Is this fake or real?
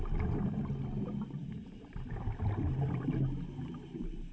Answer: real